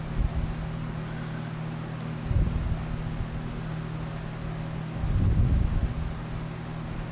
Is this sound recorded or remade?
recorded